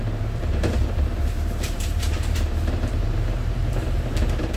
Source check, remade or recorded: remade